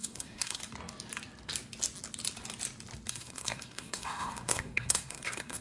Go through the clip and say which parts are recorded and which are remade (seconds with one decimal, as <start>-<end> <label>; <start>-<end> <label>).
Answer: 0.0-0.6 remade; 0.6-3.1 recorded; 3.1-5.6 remade